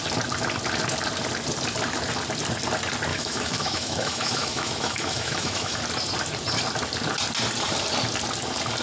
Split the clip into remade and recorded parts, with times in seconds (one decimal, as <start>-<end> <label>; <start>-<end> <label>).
0.0-3.1 recorded; 3.1-5.8 remade; 5.8-8.8 recorded